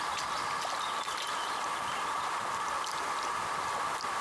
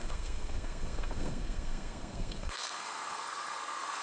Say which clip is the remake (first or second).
second